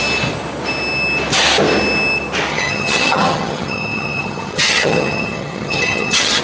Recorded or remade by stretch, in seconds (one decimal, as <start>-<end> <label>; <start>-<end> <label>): 0.0-2.5 recorded; 2.5-6.4 remade